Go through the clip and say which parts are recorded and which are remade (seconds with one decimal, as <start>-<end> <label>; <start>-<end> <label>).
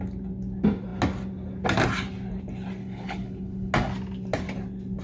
0.0-2.8 recorded; 2.8-3.7 remade; 3.7-5.0 recorded